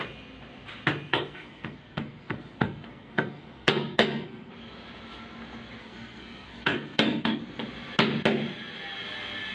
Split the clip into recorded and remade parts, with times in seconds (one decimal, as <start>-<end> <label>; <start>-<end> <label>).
0.0-1.1 recorded; 1.1-4.5 remade; 4.5-5.8 recorded; 5.8-7.4 remade; 7.4-9.5 recorded